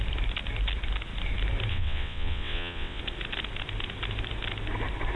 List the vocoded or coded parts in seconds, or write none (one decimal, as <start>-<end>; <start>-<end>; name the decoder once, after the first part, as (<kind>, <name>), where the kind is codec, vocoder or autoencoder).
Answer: 1.7-3.0 (vocoder, WaveNeXt)